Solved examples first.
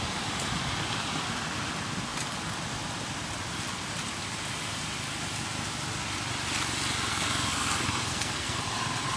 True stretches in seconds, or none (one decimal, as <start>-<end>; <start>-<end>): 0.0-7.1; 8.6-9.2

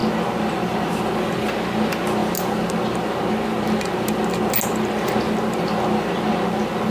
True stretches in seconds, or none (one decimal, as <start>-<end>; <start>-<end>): 0.0-6.9

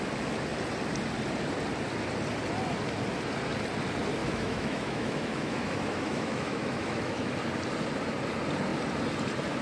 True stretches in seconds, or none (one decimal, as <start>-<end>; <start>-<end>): 0.0-4.2; 7.3-9.6